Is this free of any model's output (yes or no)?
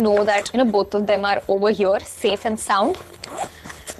no